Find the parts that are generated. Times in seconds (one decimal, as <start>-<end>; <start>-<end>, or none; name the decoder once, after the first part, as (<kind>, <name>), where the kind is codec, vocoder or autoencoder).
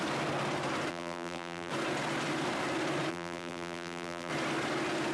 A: 0.9-1.7 (vocoder, BigVGAN v2); 3.1-4.3